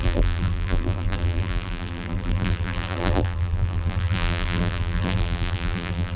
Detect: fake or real fake